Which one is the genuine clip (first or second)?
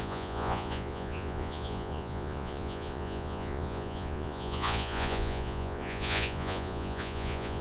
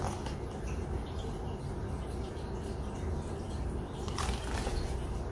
second